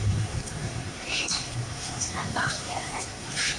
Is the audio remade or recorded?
remade